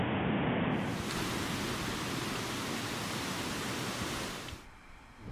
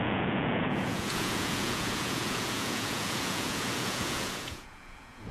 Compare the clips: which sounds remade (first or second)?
second